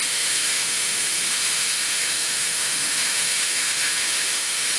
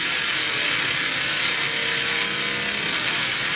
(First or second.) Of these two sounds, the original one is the second